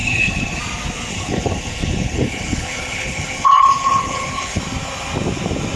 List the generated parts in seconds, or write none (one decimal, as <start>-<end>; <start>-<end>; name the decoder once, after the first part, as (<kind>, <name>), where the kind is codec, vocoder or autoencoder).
0.0-0.6 (codec, HILCodec); 1.1-4.6